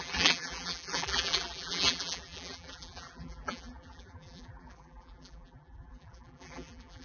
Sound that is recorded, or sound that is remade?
remade